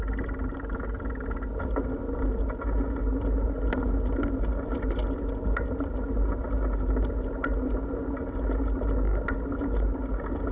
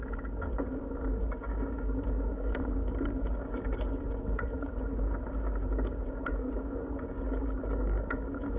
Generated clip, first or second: second